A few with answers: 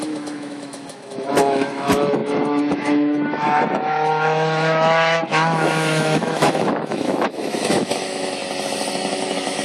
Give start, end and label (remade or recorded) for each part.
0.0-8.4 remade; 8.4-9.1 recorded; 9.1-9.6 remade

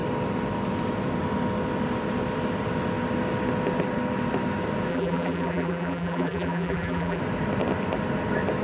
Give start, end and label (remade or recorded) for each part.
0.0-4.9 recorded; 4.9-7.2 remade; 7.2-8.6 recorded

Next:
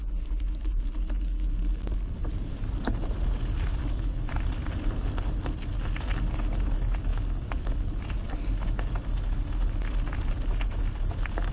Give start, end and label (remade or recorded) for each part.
0.0-2.2 recorded; 2.2-3.8 remade; 3.8-11.5 recorded